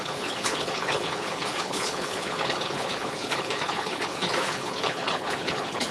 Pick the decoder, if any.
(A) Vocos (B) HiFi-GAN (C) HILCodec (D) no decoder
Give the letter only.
C